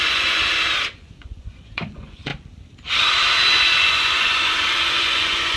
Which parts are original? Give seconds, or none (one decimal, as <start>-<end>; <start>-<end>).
0.4-0.9; 2.3-3.9